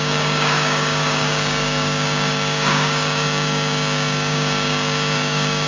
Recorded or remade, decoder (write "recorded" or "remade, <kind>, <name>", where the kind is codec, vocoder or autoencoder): remade, codec, DAC